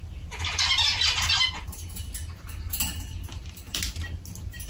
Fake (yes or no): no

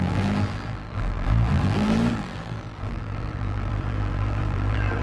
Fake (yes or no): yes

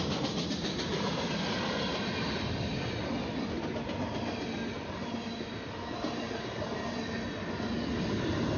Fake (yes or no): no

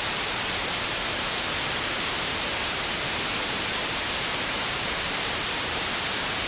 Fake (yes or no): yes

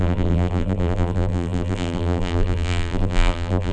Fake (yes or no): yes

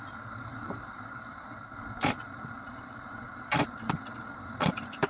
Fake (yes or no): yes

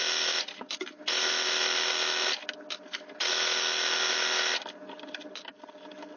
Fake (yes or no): no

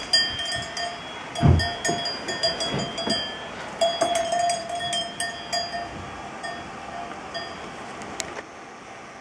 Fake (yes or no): no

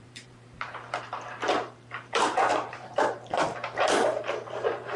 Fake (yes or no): yes